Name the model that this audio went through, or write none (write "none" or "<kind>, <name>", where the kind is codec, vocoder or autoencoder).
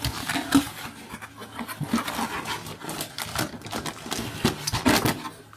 none